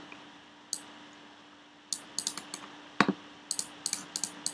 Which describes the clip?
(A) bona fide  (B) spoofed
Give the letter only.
A